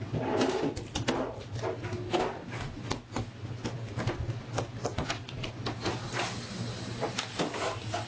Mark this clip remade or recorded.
recorded